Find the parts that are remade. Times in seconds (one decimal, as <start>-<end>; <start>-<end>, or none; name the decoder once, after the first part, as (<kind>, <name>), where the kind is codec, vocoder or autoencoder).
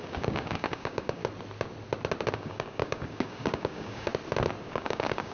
0.0-1.2 (codec, DAC); 2.3-4.1; 4.6-5.3